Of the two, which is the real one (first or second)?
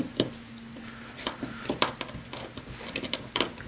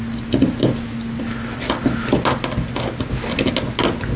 second